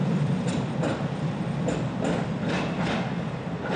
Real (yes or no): yes